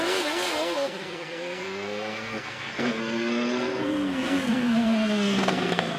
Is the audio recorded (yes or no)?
no